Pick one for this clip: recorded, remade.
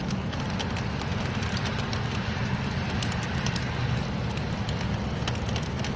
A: recorded